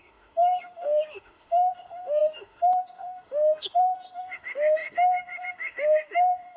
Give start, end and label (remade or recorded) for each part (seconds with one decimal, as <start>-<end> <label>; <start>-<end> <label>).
0.0-6.6 remade